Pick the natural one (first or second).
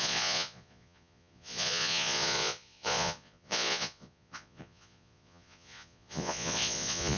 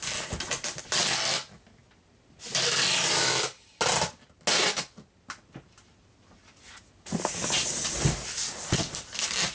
second